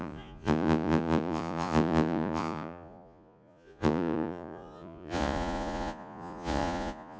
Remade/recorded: remade